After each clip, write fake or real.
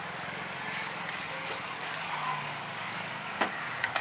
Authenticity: fake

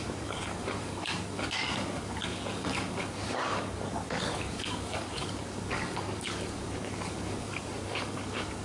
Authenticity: fake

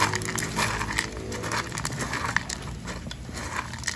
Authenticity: real